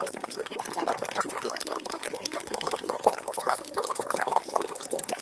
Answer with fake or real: fake